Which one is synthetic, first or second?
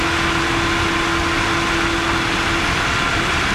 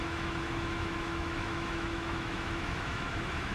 second